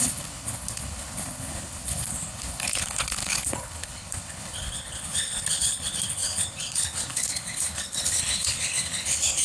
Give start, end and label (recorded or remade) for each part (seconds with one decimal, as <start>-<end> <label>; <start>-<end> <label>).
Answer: 0.0-9.4 remade